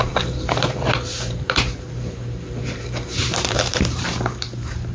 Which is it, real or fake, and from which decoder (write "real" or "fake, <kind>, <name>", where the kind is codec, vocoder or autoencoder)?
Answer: fake, vocoder, BigVGAN v2